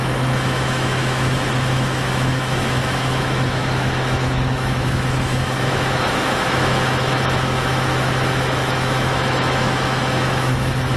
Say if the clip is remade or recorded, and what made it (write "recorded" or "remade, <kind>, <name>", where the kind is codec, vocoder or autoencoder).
remade, autoencoder, DAC-VAE